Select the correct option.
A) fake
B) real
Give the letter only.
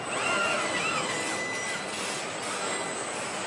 B